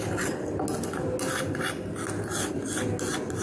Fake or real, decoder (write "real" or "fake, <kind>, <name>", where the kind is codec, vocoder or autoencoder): real